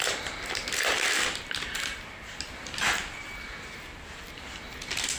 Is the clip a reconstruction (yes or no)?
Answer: no